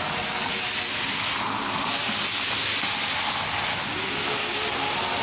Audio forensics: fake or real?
real